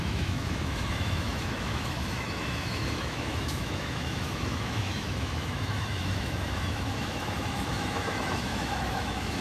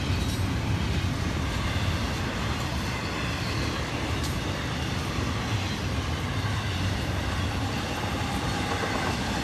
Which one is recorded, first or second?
second